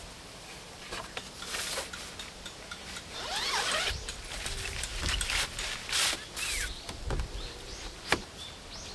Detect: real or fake real